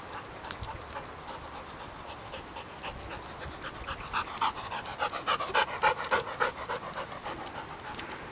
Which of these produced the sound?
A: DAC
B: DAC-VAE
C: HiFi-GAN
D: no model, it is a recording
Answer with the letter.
D